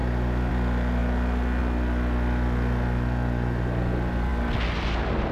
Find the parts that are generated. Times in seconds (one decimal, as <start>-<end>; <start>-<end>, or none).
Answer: none